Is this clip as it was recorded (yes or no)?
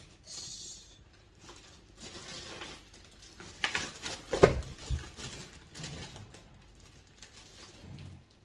yes